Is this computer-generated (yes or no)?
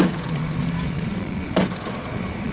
yes